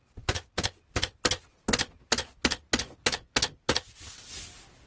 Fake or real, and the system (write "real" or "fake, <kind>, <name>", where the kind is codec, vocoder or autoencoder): real